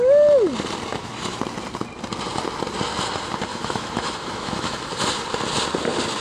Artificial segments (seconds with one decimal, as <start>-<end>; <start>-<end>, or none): 0.9-1.4; 3.5-4.9

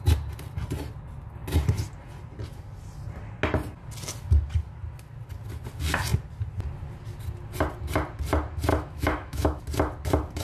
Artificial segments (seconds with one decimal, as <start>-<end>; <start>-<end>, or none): 8.7-9.6

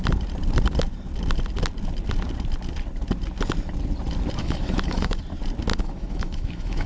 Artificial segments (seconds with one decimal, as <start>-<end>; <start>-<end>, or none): 4.4-5.2; 5.7-6.9